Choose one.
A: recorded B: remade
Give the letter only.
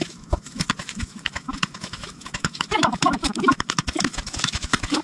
B